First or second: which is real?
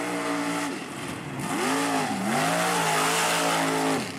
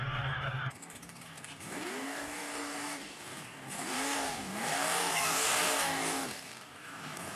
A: first